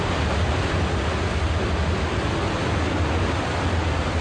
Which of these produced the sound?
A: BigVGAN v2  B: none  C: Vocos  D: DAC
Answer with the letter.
B